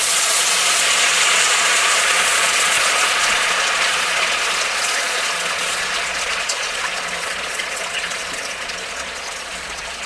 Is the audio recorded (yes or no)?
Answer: no